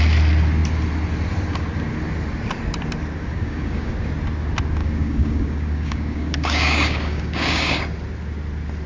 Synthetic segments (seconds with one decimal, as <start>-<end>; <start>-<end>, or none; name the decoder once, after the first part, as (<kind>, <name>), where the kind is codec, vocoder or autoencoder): 3.3-3.9 (codec, DAC); 4.8-7.8